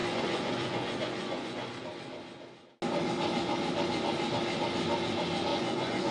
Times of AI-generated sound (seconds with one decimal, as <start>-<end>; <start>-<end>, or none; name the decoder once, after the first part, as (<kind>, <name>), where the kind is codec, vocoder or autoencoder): 0.0-1.7 (vocoder, Vocos); 5.5-6.1